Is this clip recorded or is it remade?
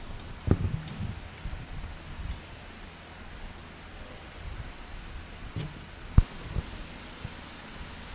recorded